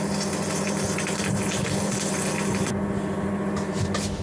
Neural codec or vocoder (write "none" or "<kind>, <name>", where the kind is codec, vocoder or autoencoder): none